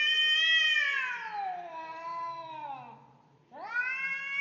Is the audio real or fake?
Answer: real